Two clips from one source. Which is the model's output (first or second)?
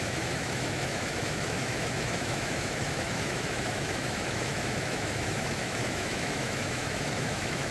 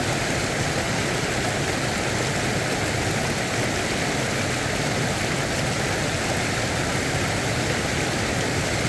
first